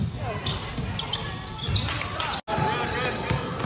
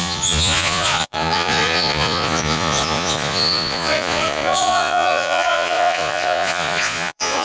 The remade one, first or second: second